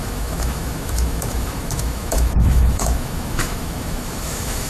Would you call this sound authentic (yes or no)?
no